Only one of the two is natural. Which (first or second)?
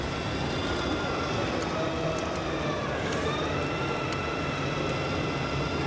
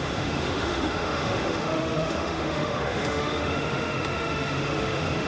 first